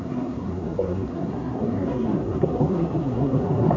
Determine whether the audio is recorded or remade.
remade